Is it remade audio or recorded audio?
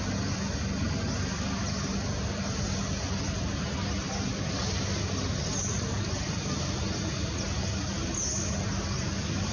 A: recorded